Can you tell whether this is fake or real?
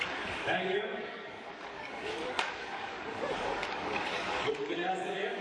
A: fake